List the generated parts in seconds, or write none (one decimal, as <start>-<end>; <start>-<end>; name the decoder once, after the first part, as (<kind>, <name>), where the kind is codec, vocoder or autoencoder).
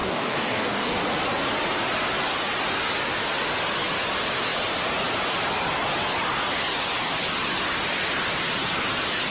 0.0-1.0 (codec, DAC)